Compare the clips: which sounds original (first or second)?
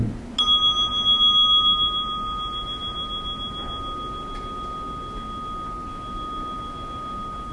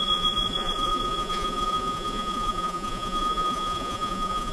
first